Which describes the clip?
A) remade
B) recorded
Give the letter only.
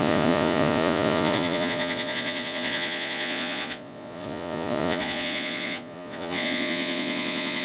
A